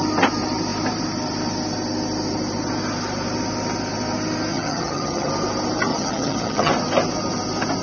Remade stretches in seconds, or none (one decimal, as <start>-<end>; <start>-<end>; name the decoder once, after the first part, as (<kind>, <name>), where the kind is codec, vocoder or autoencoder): 4.5-5.3 (vocoder, HiFi-GAN); 5.9-6.7